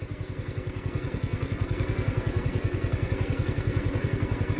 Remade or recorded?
remade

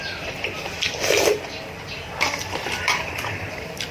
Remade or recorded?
remade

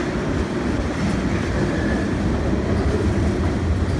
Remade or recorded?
recorded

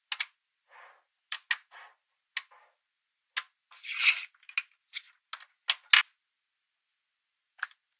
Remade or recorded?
recorded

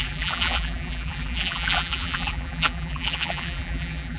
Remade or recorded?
remade